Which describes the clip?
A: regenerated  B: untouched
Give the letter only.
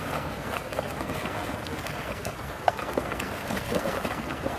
A